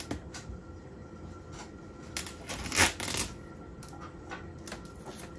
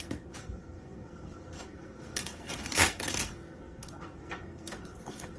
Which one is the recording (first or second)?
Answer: first